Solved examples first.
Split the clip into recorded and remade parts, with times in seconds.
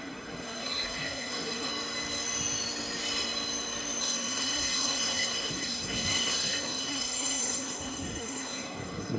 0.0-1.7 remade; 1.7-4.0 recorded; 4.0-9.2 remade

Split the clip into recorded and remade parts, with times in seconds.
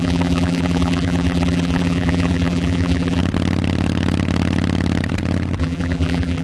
0.0-3.2 remade; 3.2-5.6 recorded; 5.6-6.4 remade